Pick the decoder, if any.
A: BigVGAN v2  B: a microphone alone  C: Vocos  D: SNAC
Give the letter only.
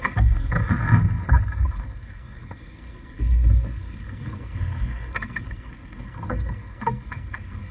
D